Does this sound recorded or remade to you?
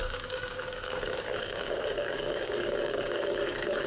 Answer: remade